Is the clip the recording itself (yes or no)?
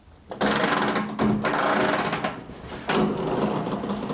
yes